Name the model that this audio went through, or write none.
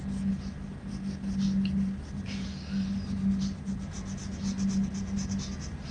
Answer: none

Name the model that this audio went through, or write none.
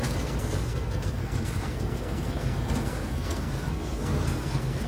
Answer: codec, SNAC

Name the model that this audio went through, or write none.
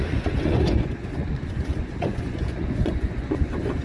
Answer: vocoder, Vocos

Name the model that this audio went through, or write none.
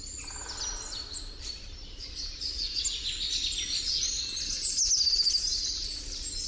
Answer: none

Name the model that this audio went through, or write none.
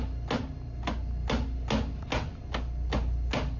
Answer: none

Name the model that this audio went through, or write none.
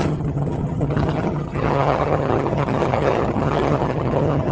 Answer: vocoder, HiFi-GAN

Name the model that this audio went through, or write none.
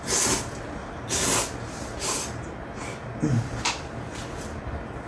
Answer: none